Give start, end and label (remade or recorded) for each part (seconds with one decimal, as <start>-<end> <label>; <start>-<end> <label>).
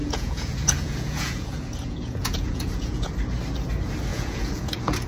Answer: 0.0-3.1 remade; 3.1-4.1 recorded; 4.1-5.1 remade